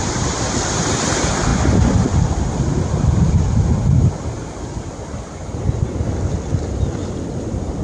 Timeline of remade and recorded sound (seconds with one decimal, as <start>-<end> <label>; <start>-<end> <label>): 0.0-7.8 recorded